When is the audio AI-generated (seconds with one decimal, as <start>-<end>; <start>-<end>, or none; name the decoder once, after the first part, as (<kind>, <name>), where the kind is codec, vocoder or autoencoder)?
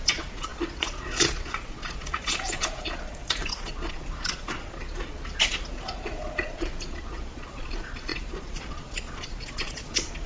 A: 0.0-10.3 (vocoder, Vocos)